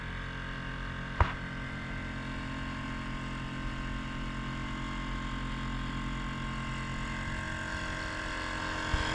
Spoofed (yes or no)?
no